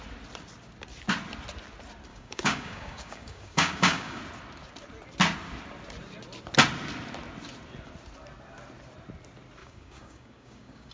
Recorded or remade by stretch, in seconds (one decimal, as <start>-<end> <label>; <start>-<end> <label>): 0.0-2.1 recorded; 2.1-4.2 remade; 4.2-9.6 recorded; 9.6-10.9 remade